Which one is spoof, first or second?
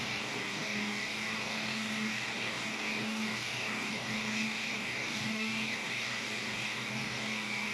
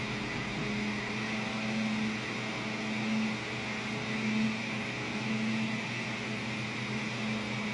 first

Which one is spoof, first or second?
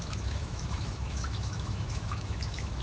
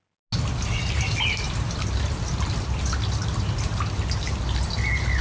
first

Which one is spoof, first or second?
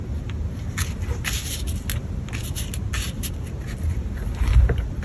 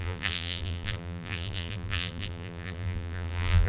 second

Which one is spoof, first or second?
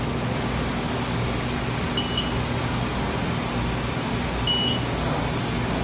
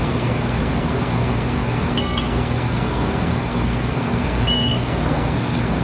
second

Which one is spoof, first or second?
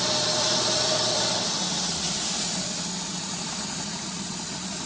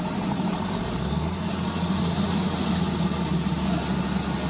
first